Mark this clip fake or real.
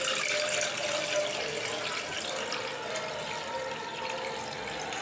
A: real